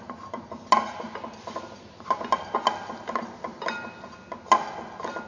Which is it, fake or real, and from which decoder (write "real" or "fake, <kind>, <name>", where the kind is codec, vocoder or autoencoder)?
real